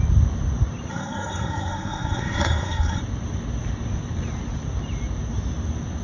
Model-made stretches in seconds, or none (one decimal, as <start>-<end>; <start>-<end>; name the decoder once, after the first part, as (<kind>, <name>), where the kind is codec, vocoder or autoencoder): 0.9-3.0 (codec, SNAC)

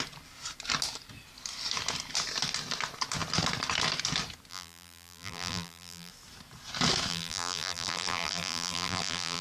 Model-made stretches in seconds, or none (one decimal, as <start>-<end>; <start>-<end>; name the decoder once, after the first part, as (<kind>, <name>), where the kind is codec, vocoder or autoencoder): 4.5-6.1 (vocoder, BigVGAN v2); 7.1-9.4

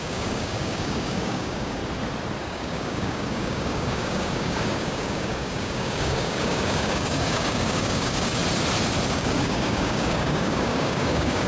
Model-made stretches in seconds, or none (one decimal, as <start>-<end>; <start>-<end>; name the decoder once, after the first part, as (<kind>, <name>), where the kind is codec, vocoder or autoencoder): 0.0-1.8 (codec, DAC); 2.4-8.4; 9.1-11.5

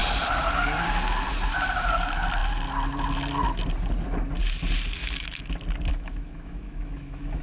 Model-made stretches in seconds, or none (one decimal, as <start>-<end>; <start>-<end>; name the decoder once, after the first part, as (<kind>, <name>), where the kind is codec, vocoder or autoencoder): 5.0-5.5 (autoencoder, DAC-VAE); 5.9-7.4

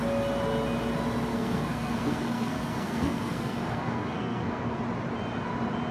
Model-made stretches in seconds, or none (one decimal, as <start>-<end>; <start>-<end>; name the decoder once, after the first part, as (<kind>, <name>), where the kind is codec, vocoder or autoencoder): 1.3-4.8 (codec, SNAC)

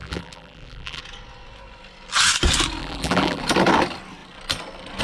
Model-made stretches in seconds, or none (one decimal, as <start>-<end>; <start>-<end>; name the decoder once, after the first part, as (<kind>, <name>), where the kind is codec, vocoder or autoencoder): 0.0-1.0 (vocoder, BigVGAN v2); 2.8-3.4

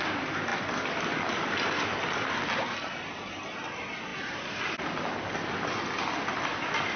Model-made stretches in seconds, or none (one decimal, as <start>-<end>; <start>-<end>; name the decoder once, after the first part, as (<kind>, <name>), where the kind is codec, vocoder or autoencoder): none